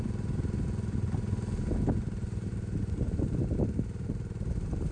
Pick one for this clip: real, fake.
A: real